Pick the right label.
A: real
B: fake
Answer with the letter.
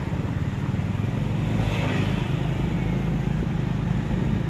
A